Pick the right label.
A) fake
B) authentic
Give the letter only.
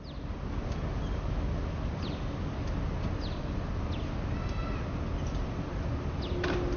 B